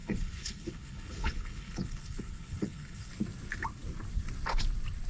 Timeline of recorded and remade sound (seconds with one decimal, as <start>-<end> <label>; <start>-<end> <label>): 0.0-3.1 remade; 3.1-5.1 recorded